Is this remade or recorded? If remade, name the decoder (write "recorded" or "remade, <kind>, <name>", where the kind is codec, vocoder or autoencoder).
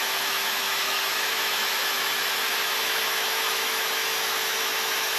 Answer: remade, autoencoder, DAC-VAE